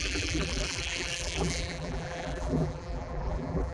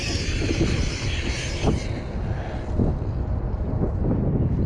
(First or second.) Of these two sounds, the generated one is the first